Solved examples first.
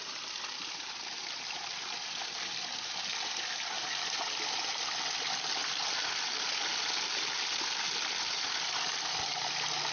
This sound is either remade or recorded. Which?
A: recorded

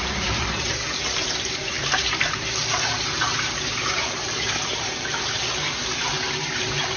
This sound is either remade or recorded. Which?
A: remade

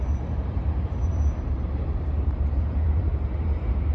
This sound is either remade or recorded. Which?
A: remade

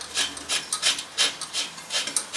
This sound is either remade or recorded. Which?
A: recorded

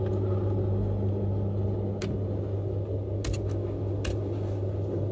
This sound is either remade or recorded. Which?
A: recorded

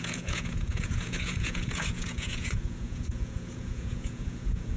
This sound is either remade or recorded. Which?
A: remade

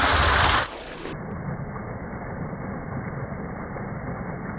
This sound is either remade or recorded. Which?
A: remade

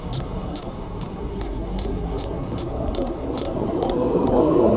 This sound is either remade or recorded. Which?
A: remade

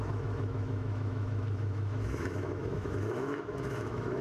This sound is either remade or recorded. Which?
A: remade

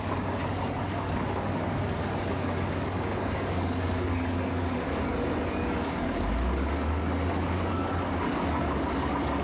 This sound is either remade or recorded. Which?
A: remade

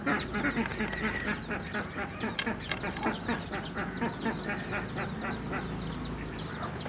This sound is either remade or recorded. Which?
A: recorded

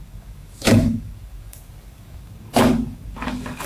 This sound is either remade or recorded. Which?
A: remade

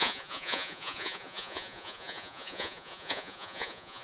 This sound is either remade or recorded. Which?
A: remade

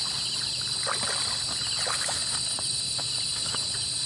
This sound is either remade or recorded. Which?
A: remade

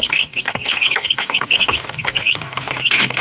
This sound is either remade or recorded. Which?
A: remade